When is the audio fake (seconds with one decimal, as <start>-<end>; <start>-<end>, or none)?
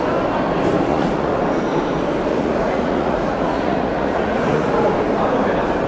0.9-1.4; 2.3-4.7